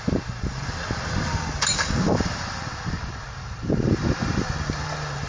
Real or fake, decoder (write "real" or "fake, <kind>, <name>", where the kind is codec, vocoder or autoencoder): real